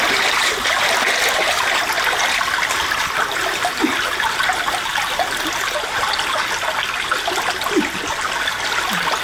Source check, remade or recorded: recorded